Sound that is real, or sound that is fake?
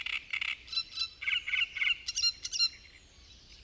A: real